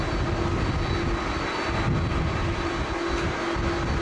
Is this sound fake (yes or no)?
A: no